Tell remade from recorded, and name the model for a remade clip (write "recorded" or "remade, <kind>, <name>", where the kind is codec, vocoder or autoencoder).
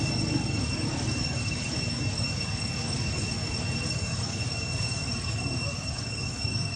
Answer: remade, codec, DAC